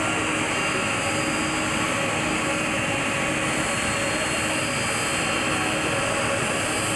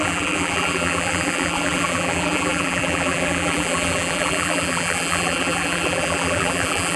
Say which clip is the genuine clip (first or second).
first